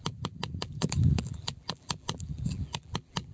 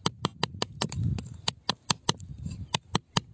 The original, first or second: second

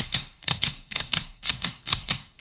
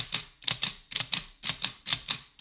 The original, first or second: second